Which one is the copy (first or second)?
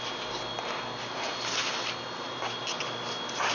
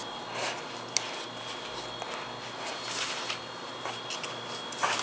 second